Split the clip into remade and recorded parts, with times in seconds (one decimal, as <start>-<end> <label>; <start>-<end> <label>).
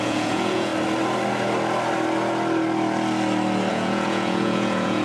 0.0-0.7 remade; 0.7-3.7 recorded; 3.7-5.0 remade